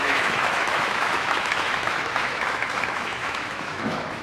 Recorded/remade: remade